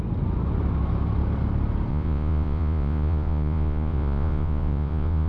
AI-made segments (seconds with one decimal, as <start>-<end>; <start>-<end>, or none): 1.9-5.3